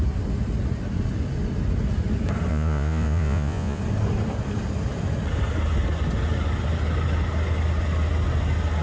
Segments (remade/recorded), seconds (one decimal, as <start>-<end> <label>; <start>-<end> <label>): 0.0-2.5 recorded; 2.5-3.8 remade; 3.8-8.8 recorded